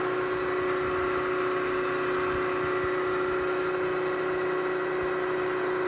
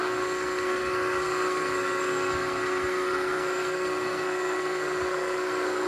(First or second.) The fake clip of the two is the second